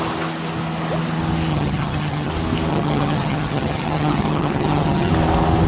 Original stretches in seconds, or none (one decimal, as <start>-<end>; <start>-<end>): 0.0-1.5; 2.3-2.7; 5.1-5.7